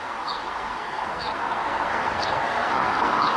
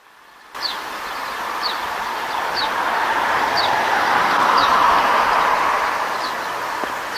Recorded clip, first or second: second